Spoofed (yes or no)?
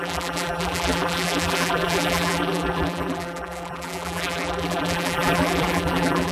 yes